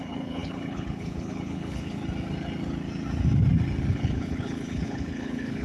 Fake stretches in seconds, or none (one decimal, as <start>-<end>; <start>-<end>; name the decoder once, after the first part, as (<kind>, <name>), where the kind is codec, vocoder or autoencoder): 0.0-2.0 (codec, HILCodec); 3.9-5.6